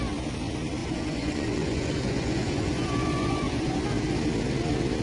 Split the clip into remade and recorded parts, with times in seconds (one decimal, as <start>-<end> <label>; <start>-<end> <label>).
0.0-0.8 recorded; 0.8-3.8 remade; 3.8-5.0 recorded